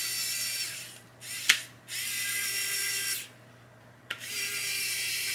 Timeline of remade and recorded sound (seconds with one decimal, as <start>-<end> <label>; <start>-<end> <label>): 0.0-0.7 recorded; 0.7-1.1 remade; 1.1-4.0 recorded; 4.0-5.3 remade